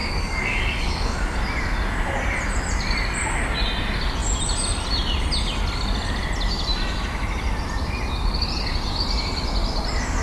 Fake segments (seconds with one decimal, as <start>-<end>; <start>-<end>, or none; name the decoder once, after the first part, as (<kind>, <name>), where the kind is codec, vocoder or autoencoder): 0.0-1.4 (codec, DAC)